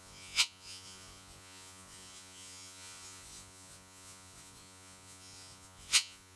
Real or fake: fake